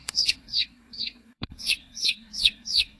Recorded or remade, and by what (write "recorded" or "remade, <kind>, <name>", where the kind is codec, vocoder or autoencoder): remade, codec, SNAC